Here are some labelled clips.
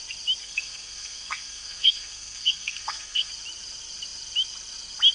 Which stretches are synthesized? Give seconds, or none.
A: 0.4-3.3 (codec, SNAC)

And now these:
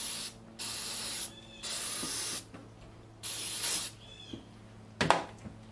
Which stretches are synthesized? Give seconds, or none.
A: none

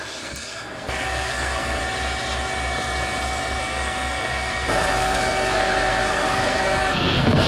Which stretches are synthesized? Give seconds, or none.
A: 0.0-1.8 (codec, SNAC); 3.6-7.5

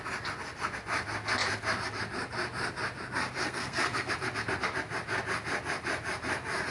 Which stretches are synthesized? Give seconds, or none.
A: 3.4-4.1 (codec, SNAC)

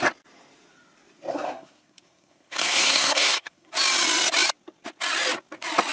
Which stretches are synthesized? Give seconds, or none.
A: 1.3-3.7 (codec, SNAC)

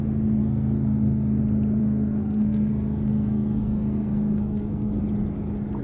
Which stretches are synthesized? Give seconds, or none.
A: 0.4-1.4 (codec, SNAC); 1.8-5.0